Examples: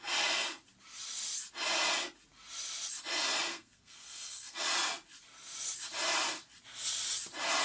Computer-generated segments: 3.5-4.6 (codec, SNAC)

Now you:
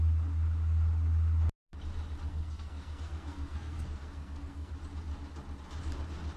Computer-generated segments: 2.3-4.7 (codec, SNAC)

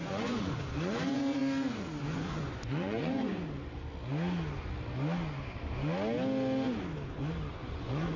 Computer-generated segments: 0.0-1.4 (vocoder, Vocos); 2.0-3.3; 7.5-8.2

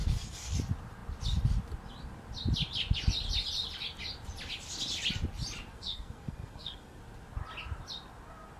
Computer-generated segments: 0.0-0.5 (codec, SNAC); 5.7-7.0

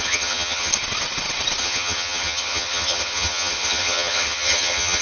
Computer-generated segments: 0.0-0.7 (vocoder, HiFi-GAN); 1.6-5.0

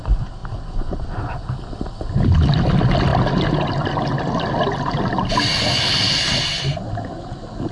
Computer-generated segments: none

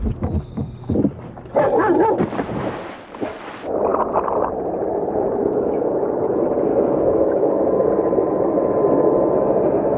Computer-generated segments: 5.4-6.0 (codec, DAC); 6.7-7.9